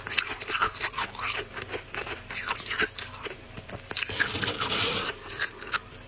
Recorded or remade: remade